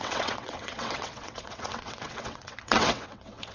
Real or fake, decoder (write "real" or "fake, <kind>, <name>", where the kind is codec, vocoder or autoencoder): fake, vocoder, WaveNeXt